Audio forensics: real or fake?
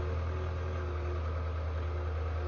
real